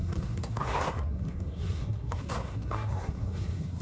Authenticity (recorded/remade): remade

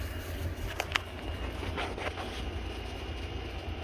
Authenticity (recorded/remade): recorded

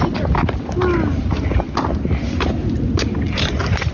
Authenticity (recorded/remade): recorded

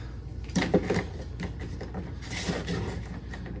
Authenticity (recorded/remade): recorded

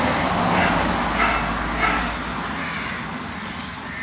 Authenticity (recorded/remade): recorded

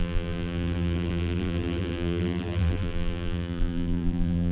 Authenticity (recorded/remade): remade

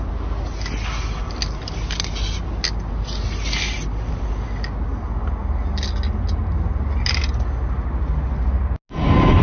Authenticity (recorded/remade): recorded